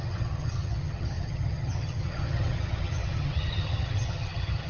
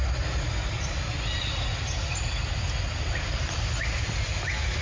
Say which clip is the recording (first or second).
second